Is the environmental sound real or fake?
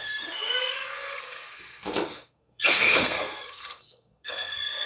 fake